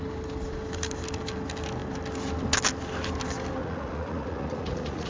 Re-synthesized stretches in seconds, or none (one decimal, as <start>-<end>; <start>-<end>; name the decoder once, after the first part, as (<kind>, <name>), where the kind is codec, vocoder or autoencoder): 3.6-5.1 (vocoder, Vocos)